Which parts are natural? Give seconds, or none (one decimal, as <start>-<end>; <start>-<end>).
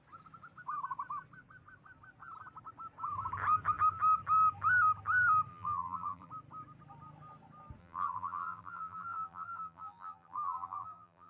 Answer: 0.0-5.5; 6.3-7.8